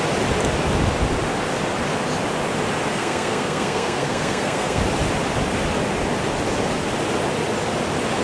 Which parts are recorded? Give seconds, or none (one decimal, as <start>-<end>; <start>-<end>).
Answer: 0.0-2.9; 4.8-8.2